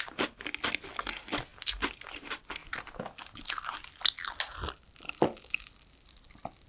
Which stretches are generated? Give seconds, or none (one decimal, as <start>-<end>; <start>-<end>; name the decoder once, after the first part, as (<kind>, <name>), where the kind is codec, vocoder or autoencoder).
1.5-2.1 (vocoder, BigVGAN v2); 2.6-6.7